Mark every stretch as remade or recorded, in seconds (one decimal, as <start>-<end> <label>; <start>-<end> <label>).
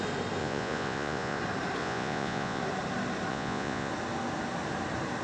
0.0-0.4 recorded; 0.4-1.4 remade; 1.4-1.8 recorded; 1.8-2.6 remade; 2.6-3.3 recorded; 3.3-3.9 remade; 3.9-5.2 recorded